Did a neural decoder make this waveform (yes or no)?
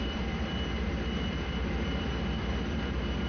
yes